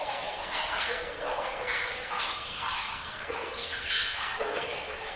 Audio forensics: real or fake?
fake